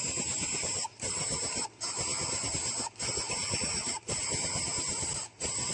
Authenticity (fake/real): real